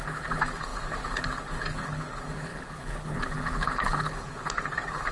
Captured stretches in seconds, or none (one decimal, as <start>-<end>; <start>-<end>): none